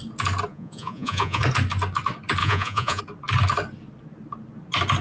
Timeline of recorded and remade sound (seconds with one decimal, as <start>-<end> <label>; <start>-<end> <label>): 0.0-0.5 recorded; 0.5-1.4 remade; 1.4-2.4 recorded; 2.4-3.0 remade; 3.0-5.0 recorded